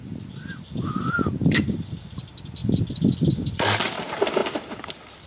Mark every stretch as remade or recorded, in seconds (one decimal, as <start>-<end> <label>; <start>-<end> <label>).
0.0-2.1 remade; 2.1-2.6 recorded; 2.6-3.8 remade; 3.8-5.3 recorded